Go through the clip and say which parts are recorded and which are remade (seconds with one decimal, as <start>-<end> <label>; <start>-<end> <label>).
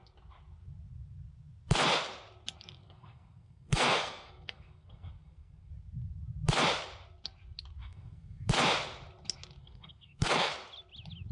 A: 0.0-2.8 recorded; 2.8-5.7 remade; 5.7-7.8 recorded; 7.8-8.5 remade; 8.5-9.6 recorded; 9.6-10.5 remade; 10.5-11.3 recorded